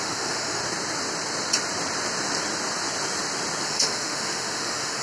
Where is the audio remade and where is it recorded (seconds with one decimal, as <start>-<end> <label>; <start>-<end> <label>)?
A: 0.0-0.6 remade; 0.6-3.6 recorded; 3.6-5.0 remade